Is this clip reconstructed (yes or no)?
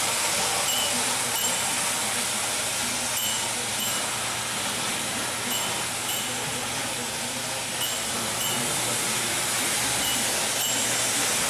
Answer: no